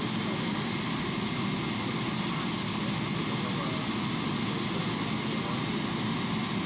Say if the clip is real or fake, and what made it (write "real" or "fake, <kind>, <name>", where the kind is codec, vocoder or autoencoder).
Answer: real